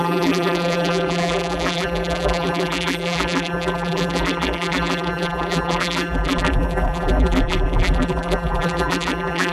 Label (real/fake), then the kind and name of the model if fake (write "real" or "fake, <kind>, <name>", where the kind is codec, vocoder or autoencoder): fake, vocoder, BigVGAN v2